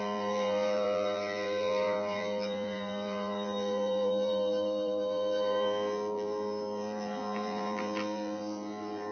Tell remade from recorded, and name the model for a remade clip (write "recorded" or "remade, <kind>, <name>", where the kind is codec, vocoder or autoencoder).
remade, vocoder, BigVGAN v2